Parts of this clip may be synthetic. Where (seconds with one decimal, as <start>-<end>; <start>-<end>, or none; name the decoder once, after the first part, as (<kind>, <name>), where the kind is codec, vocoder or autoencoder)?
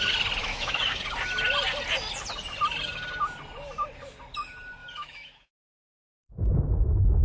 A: 0.4-1.0 (autoencoder, DAC-VAE); 4.8-7.2